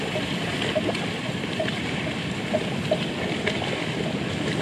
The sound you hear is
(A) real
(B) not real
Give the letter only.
A